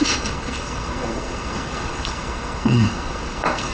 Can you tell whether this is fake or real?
fake